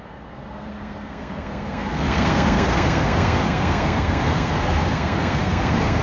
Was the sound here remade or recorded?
remade